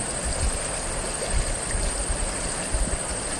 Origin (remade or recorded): recorded